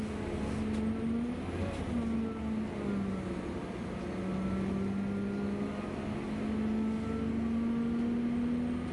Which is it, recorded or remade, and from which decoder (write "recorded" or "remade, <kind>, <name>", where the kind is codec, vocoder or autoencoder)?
recorded